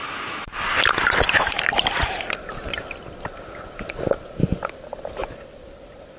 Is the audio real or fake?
real